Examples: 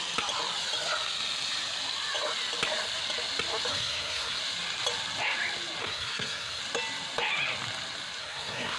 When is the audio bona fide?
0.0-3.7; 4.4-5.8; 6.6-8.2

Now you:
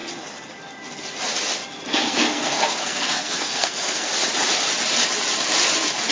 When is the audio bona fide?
0.0-1.9; 4.1-6.1